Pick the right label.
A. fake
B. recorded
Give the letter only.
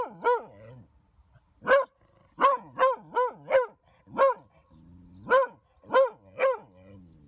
B